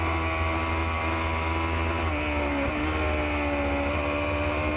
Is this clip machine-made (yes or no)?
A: no